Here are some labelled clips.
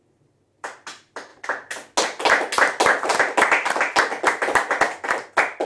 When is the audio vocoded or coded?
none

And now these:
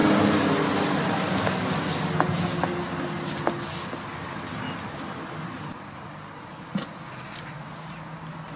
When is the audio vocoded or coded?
none

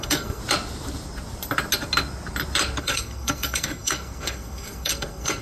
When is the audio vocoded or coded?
0.0-0.4; 2.8-5.4

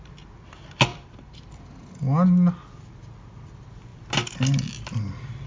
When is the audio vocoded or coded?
0.9-1.5

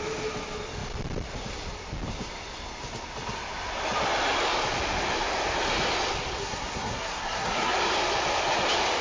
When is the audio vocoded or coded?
6.4-7.7

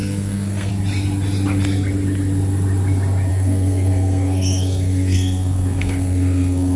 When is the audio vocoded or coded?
0.0-0.7; 3.3-6.8

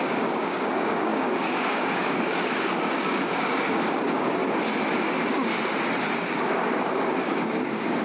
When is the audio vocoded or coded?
0.0-4.4; 5.0-5.5; 6.3-8.0

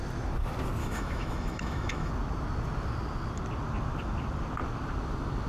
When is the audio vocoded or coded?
0.8-2.1